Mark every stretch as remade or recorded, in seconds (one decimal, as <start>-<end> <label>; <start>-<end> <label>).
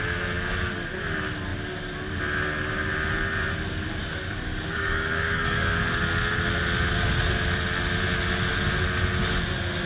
0.0-4.0 recorded; 4.0-5.8 remade; 5.8-9.9 recorded